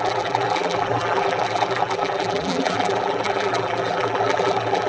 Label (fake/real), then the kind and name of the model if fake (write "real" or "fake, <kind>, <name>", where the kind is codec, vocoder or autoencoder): fake, vocoder, BigVGAN v2